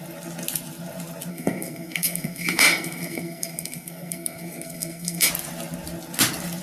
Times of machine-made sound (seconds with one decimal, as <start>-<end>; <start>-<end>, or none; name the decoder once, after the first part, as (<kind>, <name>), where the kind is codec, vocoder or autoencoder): 1.3-5.3 (codec, SNAC)